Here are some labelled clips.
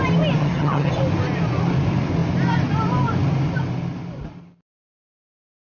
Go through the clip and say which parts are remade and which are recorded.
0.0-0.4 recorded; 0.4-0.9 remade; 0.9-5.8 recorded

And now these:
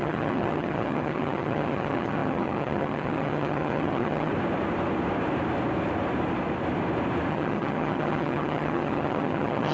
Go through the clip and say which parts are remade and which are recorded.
0.0-4.3 remade; 4.3-7.3 recorded; 7.3-9.7 remade

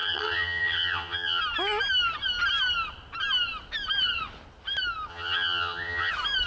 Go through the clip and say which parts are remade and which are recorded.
0.0-1.4 remade; 1.4-5.1 recorded; 5.1-6.1 remade; 6.1-6.5 recorded

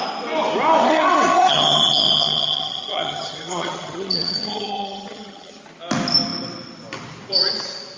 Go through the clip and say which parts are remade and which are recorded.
0.0-0.8 recorded; 0.8-5.6 remade; 5.6-8.0 recorded